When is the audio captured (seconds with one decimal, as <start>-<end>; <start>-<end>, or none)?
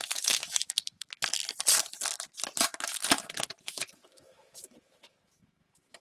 1.4-2.6; 3.0-3.6